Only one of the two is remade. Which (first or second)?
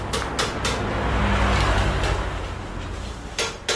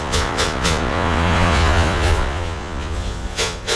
second